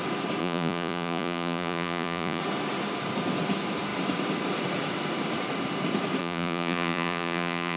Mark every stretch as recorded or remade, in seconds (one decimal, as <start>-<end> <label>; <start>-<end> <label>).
0.0-0.4 recorded; 0.4-2.4 remade; 2.4-6.2 recorded; 6.2-7.8 remade